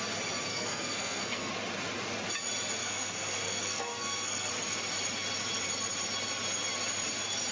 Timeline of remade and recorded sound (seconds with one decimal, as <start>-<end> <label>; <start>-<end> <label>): 0.0-0.5 recorded; 0.5-1.5 remade; 1.5-2.8 recorded; 2.8-4.5 remade; 4.5-7.5 recorded